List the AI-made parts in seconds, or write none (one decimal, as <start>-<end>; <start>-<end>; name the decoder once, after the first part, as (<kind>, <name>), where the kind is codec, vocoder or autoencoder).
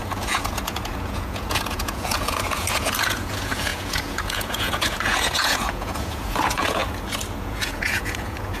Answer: 0.0-6.8 (vocoder, Vocos); 7.4-8.6